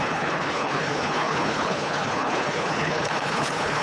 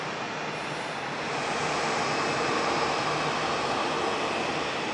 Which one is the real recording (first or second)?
second